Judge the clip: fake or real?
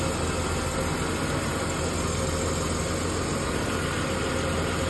real